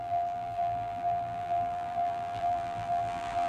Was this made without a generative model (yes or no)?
no